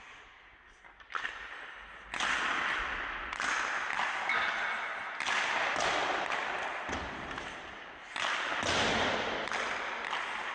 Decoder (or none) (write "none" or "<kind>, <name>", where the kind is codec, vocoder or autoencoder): none